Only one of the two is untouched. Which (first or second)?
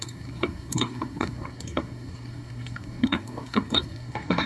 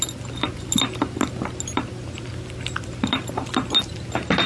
second